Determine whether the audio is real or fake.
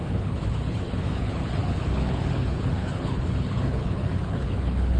fake